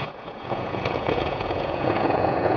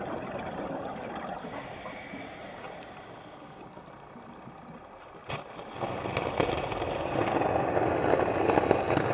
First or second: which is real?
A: second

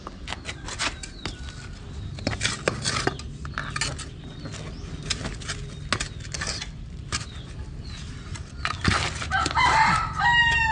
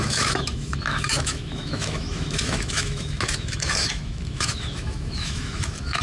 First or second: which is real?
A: first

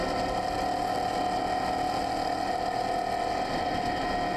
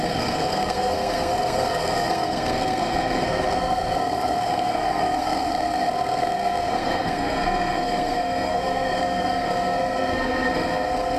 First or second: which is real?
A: first